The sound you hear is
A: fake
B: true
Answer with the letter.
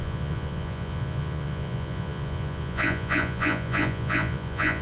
A